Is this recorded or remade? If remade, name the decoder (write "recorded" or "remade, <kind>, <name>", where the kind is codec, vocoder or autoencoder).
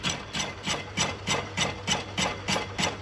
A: recorded